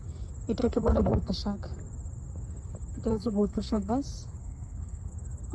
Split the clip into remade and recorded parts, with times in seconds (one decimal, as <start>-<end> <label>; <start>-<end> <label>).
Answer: 0.0-0.6 recorded; 0.6-1.3 remade; 1.3-3.1 recorded; 3.1-3.9 remade; 3.9-4.4 recorded; 4.4-5.1 remade; 5.1-5.5 recorded